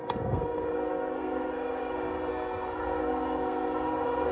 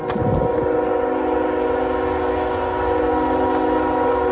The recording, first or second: second